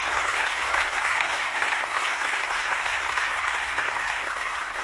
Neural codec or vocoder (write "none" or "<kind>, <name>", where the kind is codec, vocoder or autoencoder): codec, SNAC